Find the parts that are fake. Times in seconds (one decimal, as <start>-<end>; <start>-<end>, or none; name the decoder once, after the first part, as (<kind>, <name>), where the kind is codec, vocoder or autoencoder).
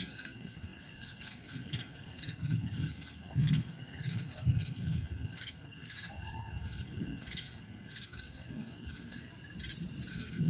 0.0-9.3 (codec, SNAC); 10.1-10.5